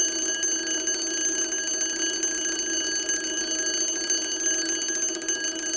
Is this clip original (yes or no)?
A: yes